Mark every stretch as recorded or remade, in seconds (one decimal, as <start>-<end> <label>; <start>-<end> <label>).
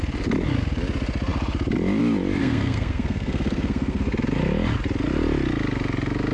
0.0-2.4 recorded; 2.4-4.0 remade; 4.0-6.3 recorded